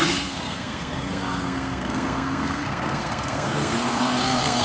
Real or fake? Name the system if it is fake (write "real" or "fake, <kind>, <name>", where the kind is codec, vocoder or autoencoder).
fake, codec, SNAC